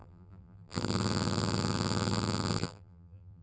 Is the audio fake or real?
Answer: fake